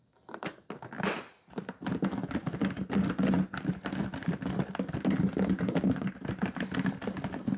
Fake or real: real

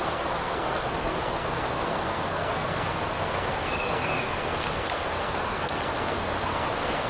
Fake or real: fake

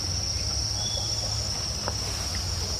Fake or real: real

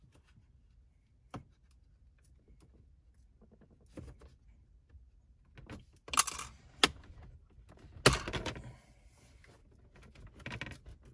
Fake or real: real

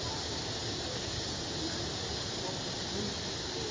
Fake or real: real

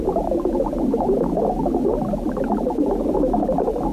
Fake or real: real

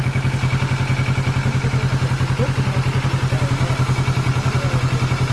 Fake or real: real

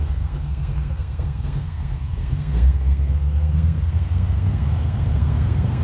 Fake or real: fake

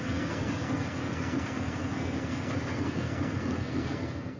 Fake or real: fake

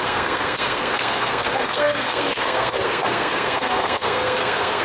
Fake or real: fake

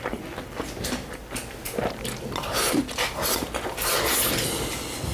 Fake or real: real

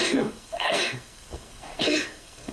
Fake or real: fake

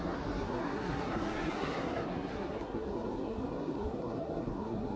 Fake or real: fake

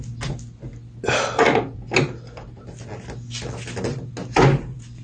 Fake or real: real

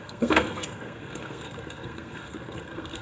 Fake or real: fake